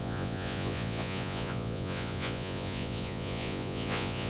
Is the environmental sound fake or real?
fake